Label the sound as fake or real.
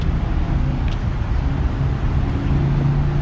real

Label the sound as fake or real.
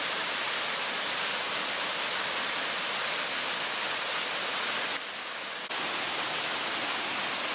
real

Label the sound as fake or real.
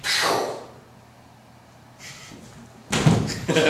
real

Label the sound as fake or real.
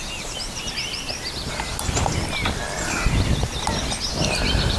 real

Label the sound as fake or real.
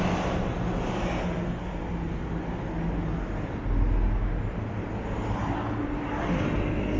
real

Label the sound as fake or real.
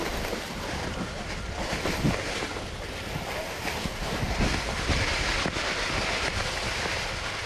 real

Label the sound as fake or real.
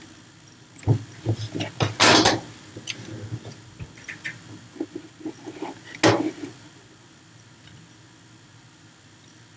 real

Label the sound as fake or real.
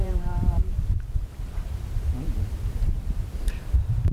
fake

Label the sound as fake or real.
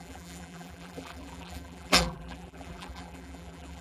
fake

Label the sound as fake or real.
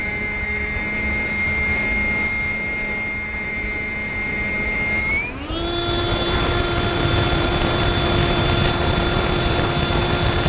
fake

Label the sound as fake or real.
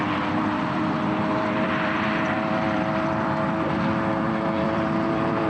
fake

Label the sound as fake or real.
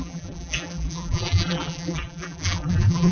fake